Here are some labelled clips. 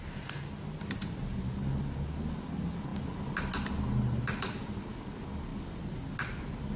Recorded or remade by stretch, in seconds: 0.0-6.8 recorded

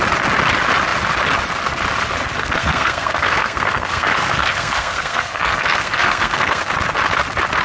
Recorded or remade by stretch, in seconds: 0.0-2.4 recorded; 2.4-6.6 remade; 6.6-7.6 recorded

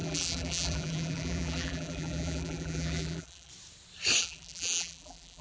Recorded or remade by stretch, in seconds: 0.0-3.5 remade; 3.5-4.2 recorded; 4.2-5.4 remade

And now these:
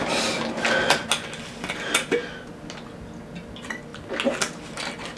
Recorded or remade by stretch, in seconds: 0.0-5.2 recorded